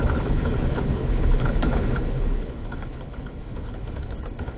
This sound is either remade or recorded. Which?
remade